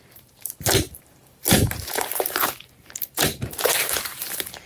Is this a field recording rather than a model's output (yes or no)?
no